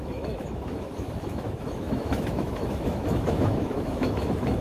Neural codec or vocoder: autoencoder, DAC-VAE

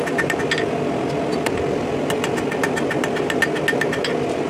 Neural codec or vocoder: none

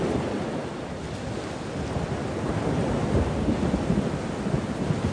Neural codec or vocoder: none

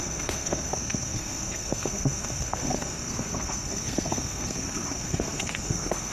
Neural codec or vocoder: codec, SNAC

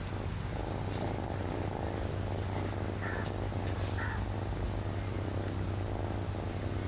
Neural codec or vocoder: none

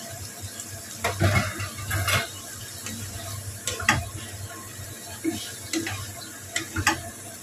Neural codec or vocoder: none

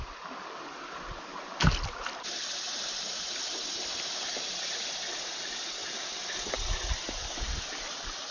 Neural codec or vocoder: none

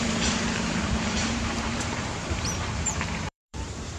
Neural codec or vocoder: vocoder, BigVGAN v2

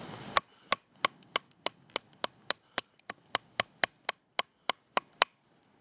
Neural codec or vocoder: none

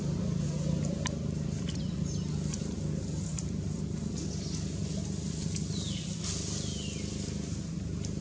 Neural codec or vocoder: none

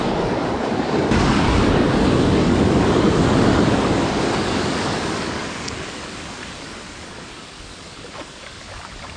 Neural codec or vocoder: codec, DAC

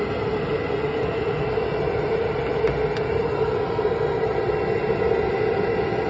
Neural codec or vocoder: none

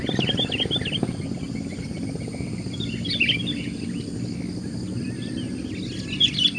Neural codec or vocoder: none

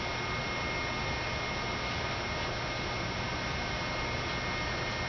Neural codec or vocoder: none